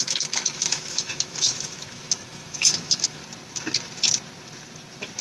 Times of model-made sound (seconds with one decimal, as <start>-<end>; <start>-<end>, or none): 0.0-3.2